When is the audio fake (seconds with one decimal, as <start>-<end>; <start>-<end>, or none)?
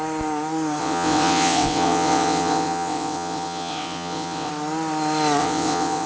0.8-4.5; 5.4-6.1